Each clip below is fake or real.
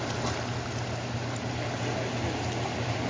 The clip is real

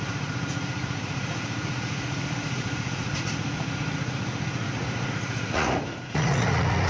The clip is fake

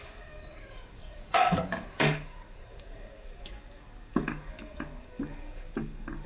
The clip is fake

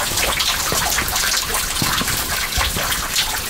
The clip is fake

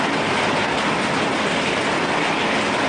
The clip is real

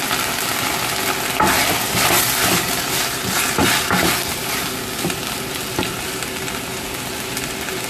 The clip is real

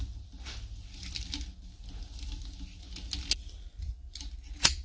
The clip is real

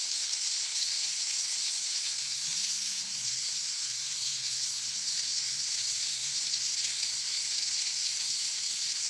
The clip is fake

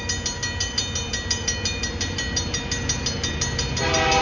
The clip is real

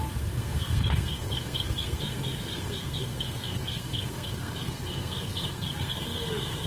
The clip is fake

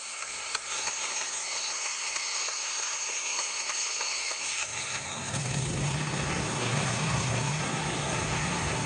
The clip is fake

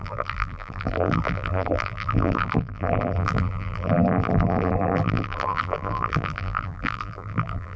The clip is fake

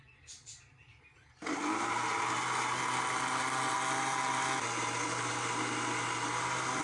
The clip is real